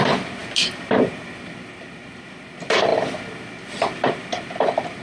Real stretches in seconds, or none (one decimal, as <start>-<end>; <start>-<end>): 2.9-3.6